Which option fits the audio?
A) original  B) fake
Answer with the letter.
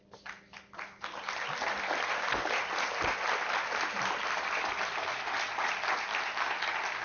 A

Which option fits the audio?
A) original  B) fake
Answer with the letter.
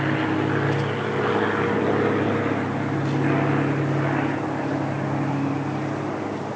A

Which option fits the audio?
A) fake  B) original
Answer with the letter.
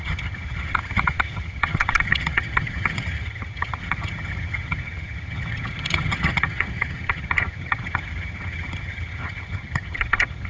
A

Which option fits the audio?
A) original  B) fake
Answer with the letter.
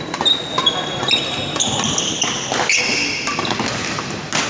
A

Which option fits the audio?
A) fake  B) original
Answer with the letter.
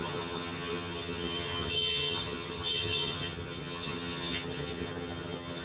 A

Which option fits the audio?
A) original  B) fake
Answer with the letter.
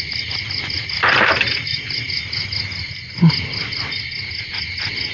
A